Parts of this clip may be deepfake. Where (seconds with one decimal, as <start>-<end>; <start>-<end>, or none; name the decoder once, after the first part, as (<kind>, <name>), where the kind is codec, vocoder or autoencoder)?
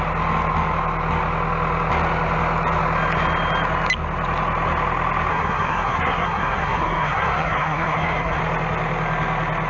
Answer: 5.3-8.4 (codec, SNAC)